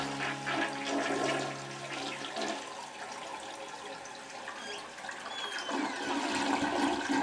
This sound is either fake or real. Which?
real